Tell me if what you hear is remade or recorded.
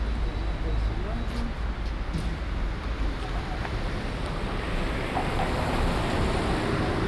recorded